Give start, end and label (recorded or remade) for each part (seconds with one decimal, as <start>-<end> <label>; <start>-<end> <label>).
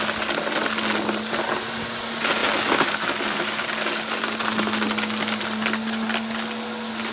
0.0-7.1 recorded